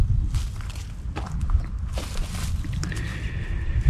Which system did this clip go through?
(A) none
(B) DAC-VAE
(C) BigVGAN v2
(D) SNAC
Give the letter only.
A